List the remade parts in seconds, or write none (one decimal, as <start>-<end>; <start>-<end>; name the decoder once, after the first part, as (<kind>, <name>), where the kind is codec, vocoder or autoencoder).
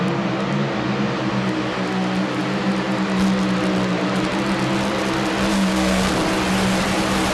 5.5-6.1 (codec, SNAC)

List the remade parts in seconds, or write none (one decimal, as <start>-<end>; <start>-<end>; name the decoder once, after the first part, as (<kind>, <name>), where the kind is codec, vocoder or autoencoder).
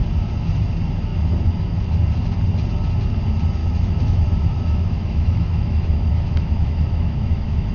3.6-7.7 (autoencoder, DAC-VAE)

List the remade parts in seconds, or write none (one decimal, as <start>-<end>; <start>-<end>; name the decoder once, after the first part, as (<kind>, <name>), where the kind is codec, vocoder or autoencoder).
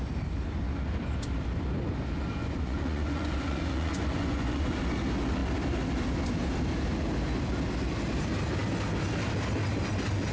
2.4-4.8 (vocoder, Vocos)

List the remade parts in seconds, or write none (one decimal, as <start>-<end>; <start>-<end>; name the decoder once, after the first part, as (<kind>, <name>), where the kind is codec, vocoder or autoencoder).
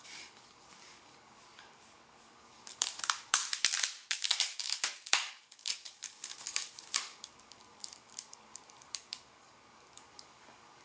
0.0-3.4 (codec, DAC); 4.1-10.8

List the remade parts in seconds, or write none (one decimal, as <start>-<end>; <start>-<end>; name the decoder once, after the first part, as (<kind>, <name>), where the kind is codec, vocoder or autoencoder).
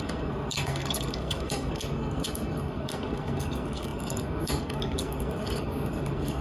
0.0-6.4 (codec, SNAC)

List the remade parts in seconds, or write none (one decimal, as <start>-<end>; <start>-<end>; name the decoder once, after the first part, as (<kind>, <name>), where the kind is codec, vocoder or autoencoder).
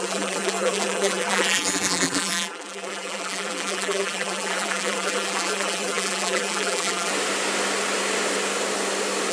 0.0-7.1 (vocoder, BigVGAN v2)